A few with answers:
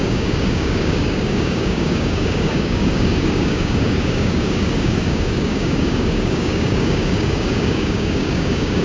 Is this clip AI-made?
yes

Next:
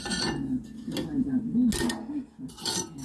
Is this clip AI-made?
no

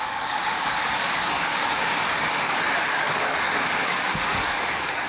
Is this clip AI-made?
yes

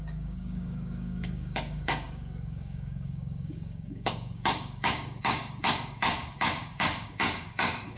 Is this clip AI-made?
yes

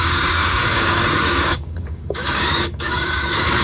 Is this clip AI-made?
yes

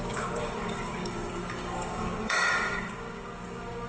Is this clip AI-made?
yes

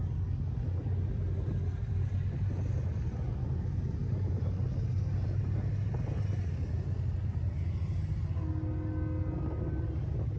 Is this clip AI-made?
no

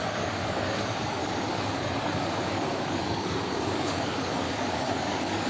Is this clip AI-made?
yes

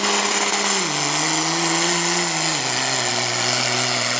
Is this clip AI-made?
no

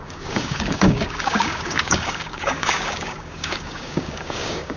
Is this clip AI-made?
yes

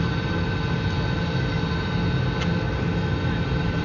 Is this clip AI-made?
no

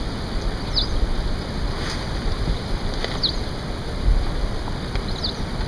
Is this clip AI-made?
no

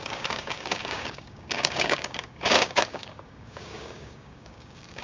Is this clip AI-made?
yes